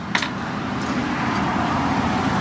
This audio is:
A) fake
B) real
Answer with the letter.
B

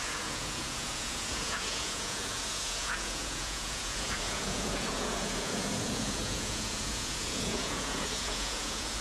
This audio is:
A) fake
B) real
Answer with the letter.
A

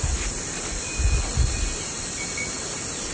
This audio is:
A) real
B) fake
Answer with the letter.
A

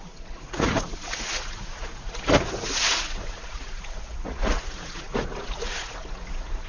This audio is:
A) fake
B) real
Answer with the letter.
A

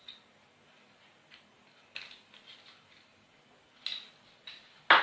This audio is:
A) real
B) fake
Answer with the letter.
A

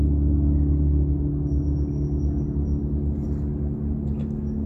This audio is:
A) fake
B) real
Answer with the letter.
B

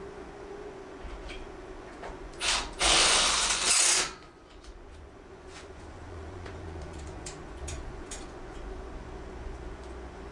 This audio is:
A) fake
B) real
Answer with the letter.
A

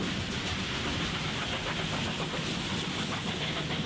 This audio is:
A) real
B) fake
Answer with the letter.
A